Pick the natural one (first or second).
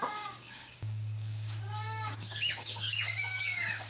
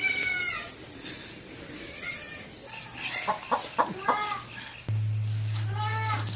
second